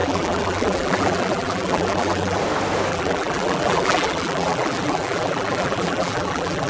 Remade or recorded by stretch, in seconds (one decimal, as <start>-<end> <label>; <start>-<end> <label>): 0.0-2.4 remade; 2.4-2.9 recorded; 2.9-6.7 remade